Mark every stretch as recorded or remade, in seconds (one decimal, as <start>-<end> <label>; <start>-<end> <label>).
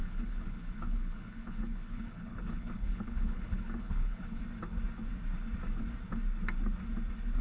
0.0-4.4 remade; 4.4-7.4 recorded